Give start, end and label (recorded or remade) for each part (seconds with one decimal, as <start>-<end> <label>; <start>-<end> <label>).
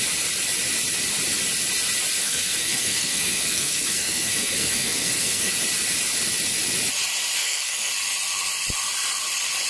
0.0-2.2 recorded; 2.2-5.5 remade; 5.5-7.4 recorded; 7.4-7.9 remade; 7.9-9.7 recorded